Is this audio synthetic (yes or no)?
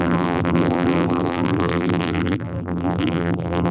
yes